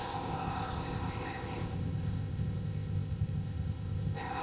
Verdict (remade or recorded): remade